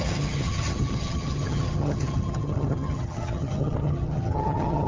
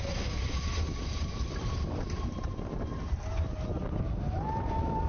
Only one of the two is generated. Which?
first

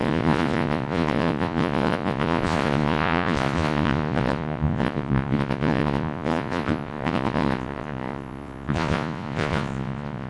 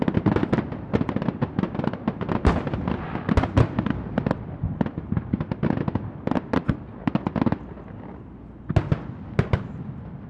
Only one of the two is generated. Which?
first